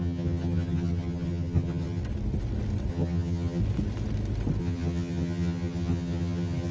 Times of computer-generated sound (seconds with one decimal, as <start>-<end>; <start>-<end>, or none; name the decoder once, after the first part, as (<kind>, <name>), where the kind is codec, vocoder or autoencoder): 0.0-2.0 (vocoder, HiFi-GAN); 2.9-3.6; 4.6-6.7

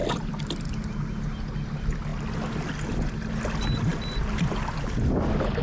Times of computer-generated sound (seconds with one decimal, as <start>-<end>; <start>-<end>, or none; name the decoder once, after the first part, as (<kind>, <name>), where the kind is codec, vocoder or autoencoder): 0.0-0.5 (vocoder, BigVGAN v2)

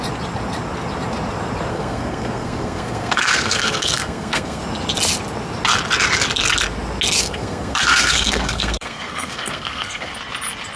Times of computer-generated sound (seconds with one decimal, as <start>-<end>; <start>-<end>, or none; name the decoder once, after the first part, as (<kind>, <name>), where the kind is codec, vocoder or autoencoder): 1.7-4.6 (codec, SNAC); 7.2-10.1

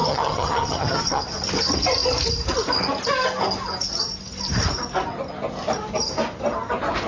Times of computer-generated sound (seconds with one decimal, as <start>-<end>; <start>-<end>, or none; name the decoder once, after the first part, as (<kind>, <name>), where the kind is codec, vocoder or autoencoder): 0.0-1.2 (vocoder, HiFi-GAN)